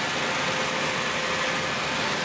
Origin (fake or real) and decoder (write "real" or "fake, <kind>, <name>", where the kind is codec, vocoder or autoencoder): real